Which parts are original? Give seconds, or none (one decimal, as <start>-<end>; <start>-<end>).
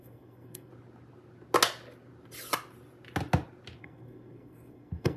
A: 0.7-3.8